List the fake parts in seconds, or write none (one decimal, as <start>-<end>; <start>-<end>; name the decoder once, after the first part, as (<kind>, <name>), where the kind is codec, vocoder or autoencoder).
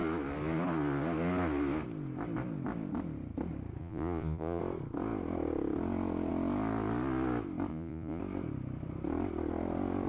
3.8-4.6 (vocoder, Vocos); 7.7-8.2